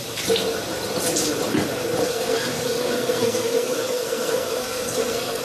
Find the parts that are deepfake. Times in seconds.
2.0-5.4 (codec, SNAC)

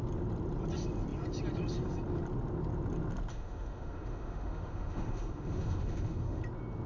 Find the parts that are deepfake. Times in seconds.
3.3-6.4 (autoencoder, DAC-VAE)

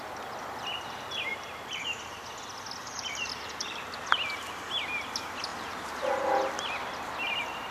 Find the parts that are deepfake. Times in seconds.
1.3-2.1 (vocoder, BigVGAN v2); 2.8-3.9; 5.5-6.5

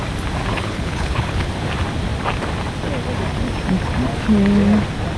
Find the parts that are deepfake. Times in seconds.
0.5-1.5 (codec, HILCodec)

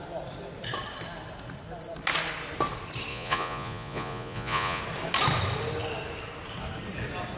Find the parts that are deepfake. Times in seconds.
3.1-4.8 (vocoder, Vocos)

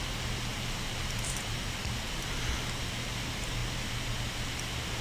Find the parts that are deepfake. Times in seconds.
0.5-1.8 (vocoder, BigVGAN v2)

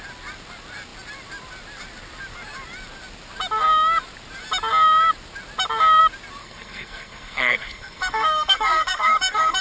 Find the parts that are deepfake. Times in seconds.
6.4-9.6 (codec, SNAC)

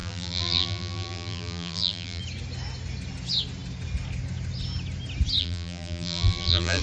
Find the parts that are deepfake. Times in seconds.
0.0-2.2 (vocoder, BigVGAN v2); 5.4-6.8